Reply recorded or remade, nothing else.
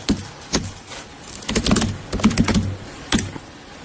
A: recorded